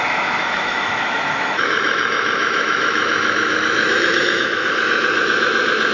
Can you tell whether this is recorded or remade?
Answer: remade